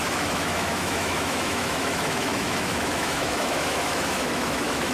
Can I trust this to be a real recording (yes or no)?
no